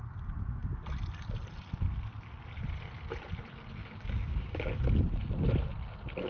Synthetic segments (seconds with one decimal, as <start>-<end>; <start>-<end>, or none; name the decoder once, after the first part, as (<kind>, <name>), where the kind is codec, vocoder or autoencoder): 3.8-4.7 (codec, DAC)